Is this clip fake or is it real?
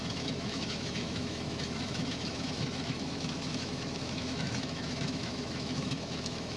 fake